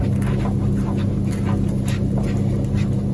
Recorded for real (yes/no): yes